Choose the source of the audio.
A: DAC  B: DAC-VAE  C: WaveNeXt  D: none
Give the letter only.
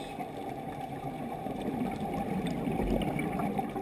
D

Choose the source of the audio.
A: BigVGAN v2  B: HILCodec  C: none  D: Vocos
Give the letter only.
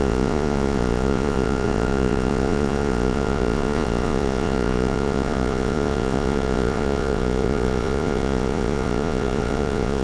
D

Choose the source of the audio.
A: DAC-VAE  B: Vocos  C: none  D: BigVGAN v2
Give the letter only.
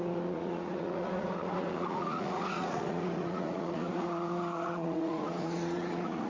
B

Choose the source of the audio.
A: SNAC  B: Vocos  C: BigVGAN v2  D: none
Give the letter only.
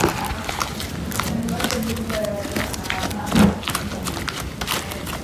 D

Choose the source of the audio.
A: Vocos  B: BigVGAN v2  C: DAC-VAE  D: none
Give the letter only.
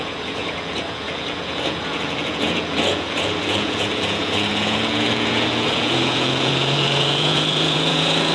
A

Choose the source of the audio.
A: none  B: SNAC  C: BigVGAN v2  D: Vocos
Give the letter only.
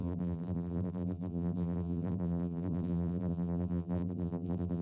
C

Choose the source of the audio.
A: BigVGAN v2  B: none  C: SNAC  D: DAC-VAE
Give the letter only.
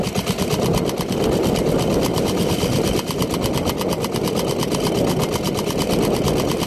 B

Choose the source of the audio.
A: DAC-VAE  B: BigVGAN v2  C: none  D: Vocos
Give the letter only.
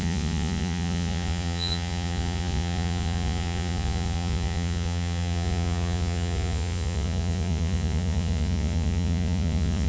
D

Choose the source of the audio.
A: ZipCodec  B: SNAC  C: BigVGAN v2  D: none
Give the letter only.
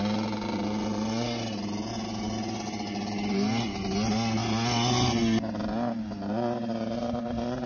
D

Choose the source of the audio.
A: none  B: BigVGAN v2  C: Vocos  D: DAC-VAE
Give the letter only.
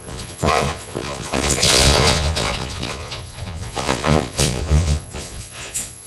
C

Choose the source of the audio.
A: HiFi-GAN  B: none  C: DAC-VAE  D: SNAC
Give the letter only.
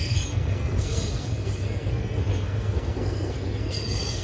D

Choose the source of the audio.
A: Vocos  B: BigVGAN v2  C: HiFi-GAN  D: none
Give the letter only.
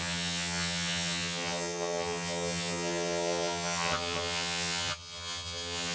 C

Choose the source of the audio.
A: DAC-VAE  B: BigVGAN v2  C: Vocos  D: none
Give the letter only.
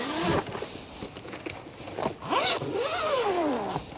D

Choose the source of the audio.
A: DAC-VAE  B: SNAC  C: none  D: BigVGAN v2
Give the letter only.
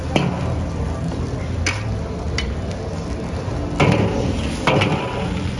C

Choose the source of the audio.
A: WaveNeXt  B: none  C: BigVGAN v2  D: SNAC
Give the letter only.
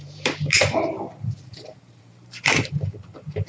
C